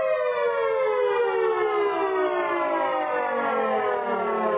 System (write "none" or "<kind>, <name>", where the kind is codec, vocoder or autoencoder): none